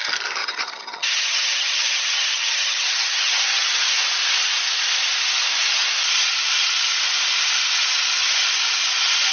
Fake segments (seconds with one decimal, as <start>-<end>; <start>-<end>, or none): 0.4-4.0